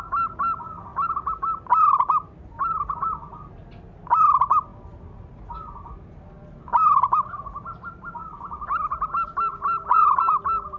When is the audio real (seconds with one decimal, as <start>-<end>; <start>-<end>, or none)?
0.0-9.5; 10.1-10.8